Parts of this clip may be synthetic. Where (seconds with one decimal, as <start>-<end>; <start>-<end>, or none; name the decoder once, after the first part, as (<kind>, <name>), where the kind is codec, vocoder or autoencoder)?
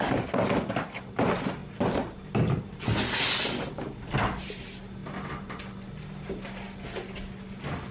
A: none